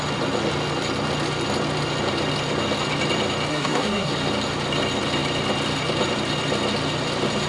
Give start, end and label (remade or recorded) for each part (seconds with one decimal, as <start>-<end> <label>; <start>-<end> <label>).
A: 0.0-3.5 recorded; 3.5-4.1 remade; 4.1-7.5 recorded